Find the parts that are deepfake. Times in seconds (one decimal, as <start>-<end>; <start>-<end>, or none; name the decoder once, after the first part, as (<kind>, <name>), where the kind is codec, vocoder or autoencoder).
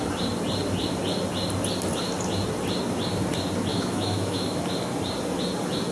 3.7-4.6 (autoencoder, DAC-VAE)